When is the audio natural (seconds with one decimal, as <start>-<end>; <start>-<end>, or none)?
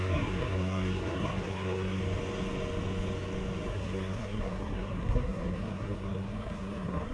2.0-3.7